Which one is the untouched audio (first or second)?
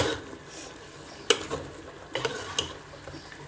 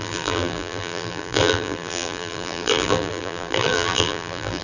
first